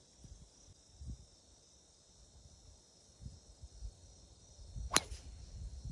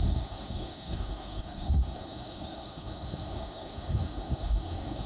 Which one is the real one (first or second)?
first